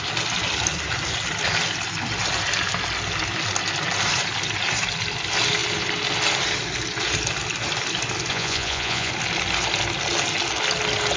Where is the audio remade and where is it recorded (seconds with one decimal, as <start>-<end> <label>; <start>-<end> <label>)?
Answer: 0.0-8.3 recorded; 8.3-9.1 remade; 9.1-11.2 recorded